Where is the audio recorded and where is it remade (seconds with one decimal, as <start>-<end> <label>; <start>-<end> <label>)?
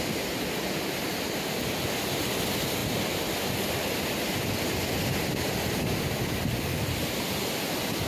0.0-8.1 recorded